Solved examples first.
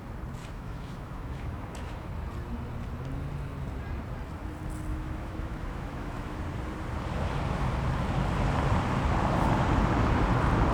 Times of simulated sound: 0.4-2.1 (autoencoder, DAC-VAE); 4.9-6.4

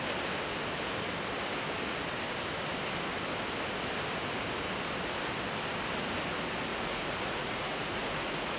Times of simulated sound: 6.7-8.6 (vocoder, Vocos)